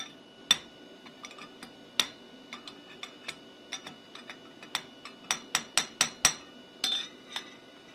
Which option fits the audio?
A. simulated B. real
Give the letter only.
B